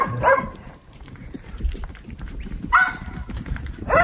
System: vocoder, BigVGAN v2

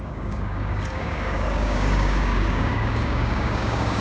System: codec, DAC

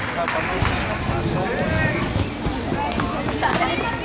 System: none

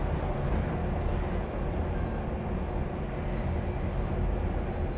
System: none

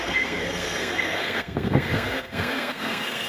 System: codec, SNAC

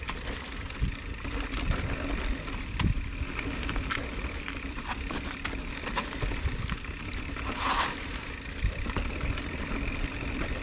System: vocoder, BigVGAN v2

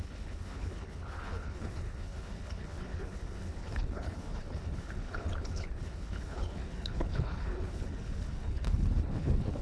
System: codec, HILCodec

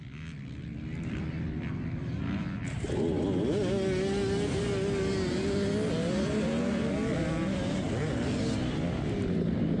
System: none